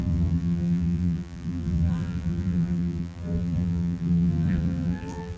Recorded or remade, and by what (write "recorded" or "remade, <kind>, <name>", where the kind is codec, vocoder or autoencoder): remade, vocoder, BigVGAN v2